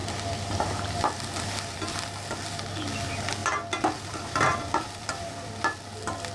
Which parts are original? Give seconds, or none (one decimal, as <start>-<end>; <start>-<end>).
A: 1.8-3.4; 5.5-6.3